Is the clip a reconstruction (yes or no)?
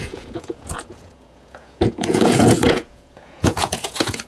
yes